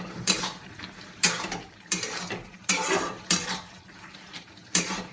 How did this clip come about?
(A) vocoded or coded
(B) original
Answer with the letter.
A